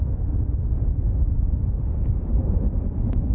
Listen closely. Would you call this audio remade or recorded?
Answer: recorded